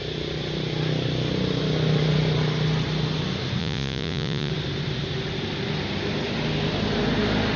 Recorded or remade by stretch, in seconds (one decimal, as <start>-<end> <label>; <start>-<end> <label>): 0.0-3.6 recorded; 3.6-4.5 remade; 4.5-7.6 recorded